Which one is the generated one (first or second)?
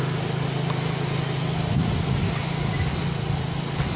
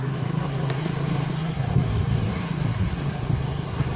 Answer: second